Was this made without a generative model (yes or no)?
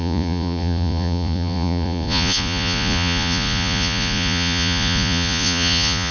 no